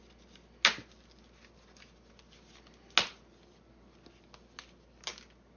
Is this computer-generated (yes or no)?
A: no